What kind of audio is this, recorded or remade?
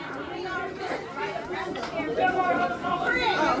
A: recorded